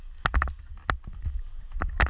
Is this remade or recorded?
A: recorded